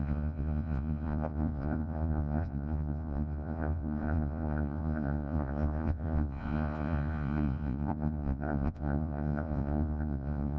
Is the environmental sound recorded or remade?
remade